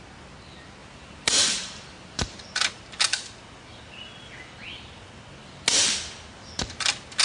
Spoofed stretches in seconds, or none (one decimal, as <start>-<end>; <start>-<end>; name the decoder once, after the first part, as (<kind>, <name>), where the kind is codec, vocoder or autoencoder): 0.8-2.4 (vocoder, BigVGAN v2)